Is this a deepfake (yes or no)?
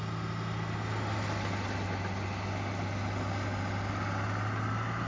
no